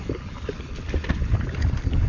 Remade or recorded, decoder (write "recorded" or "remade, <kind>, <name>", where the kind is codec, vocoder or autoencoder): recorded